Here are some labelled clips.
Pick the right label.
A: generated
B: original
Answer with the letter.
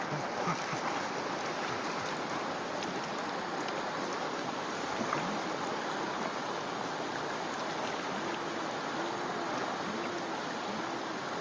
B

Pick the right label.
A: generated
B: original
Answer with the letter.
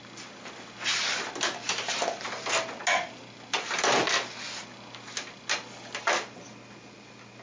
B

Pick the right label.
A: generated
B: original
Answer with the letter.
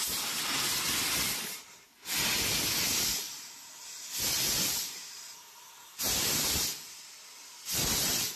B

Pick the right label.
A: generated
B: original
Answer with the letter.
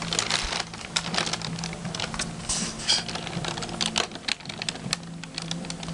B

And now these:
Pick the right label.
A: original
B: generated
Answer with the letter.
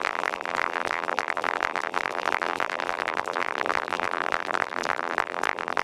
B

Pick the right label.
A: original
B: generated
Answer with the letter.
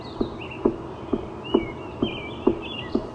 A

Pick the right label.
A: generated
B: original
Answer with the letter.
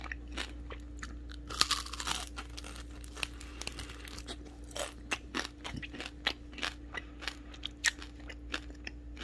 B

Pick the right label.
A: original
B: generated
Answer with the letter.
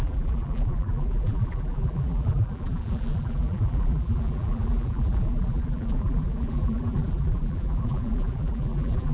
B